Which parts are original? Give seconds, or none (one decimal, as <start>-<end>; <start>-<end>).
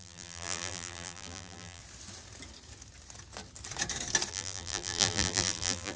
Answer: 1.8-4.3